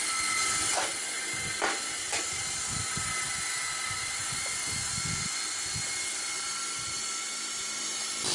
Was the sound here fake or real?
real